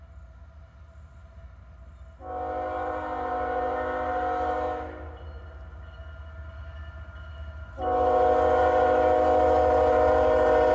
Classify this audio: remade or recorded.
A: recorded